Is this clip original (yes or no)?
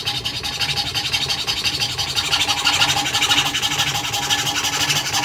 yes